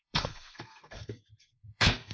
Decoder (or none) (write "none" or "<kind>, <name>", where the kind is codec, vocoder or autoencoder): codec, SNAC